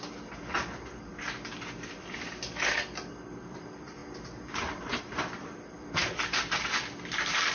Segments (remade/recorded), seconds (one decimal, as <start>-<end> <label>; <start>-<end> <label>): 0.0-7.5 remade